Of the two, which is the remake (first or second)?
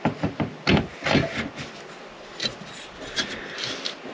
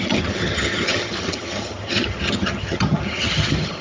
second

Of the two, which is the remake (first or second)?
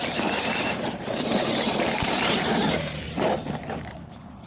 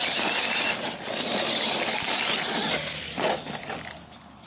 first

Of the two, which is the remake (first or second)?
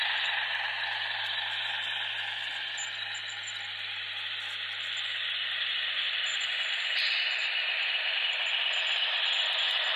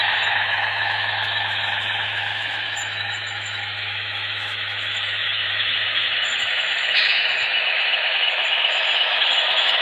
second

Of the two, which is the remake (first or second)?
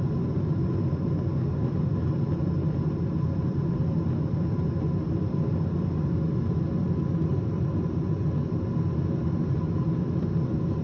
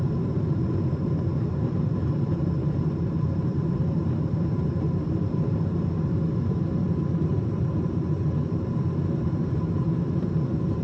second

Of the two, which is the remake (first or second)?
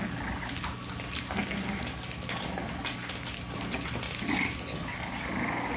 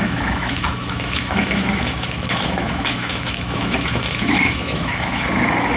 second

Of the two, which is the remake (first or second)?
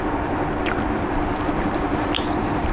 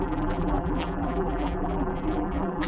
second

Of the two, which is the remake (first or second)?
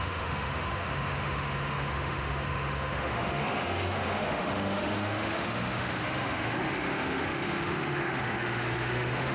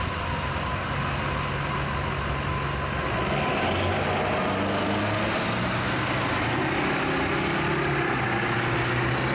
first